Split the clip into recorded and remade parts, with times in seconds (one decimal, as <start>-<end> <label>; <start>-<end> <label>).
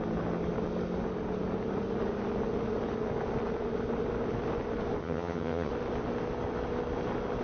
0.0-5.0 recorded; 5.0-5.7 remade; 5.7-7.4 recorded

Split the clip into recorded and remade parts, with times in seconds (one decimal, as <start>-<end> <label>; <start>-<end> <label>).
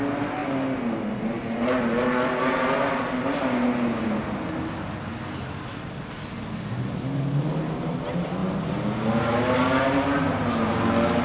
0.0-11.2 recorded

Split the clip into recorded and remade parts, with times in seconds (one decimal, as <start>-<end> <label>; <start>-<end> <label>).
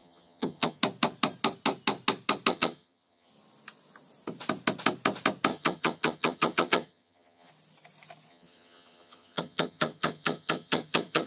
0.0-0.8 remade; 0.8-2.5 recorded; 2.5-3.3 remade; 3.3-5.5 recorded; 5.5-7.5 remade; 7.5-8.3 recorded; 8.3-11.3 remade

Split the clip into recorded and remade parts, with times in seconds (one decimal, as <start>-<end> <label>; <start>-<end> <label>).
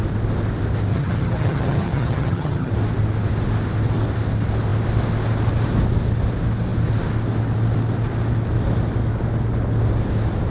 0.0-0.9 recorded; 0.9-2.7 remade; 2.7-10.5 recorded